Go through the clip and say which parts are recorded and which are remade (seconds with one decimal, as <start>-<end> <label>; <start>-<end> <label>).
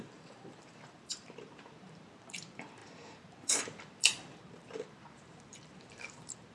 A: 0.0-6.5 remade